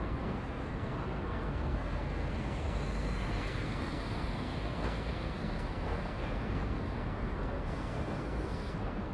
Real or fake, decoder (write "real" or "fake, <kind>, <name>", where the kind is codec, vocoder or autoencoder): fake, codec, SNAC